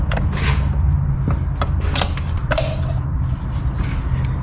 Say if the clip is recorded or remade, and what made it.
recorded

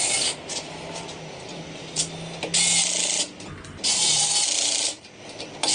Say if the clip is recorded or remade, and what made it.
recorded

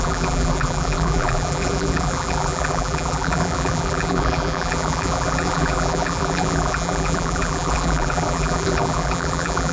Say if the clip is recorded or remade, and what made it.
remade, vocoder, BigVGAN v2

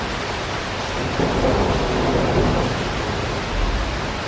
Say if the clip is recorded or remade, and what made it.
recorded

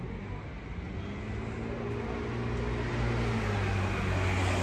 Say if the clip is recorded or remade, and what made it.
recorded